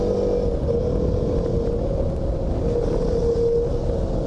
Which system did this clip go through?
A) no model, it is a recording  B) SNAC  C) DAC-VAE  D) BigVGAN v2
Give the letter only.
A